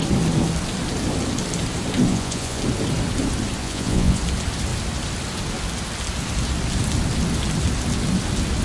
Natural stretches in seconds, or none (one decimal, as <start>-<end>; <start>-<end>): 0.0-2.1; 2.6-3.6; 4.2-8.6

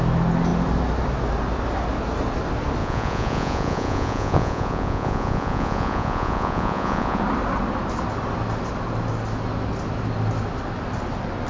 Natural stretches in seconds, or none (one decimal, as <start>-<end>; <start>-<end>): 0.0-2.8; 7.2-11.5

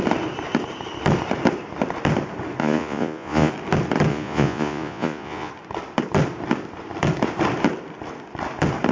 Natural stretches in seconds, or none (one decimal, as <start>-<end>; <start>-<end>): 0.0-2.6; 3.5-4.1; 5.5-8.9

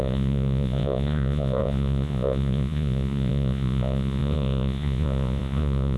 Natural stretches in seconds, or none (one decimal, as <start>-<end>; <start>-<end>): none

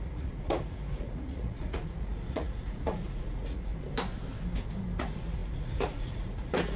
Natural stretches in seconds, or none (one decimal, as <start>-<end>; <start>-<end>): 3.7-5.0

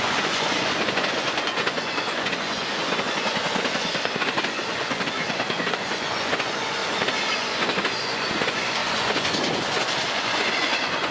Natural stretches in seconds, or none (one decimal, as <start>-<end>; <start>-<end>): 6.8-7.4

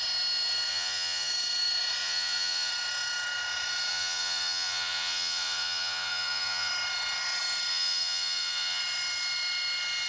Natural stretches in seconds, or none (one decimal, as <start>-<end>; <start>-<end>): 0.0-0.7; 1.3-2.0; 2.7-3.9; 6.7-7.7; 8.8-10.1